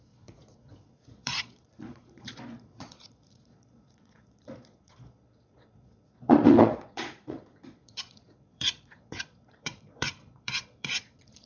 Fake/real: fake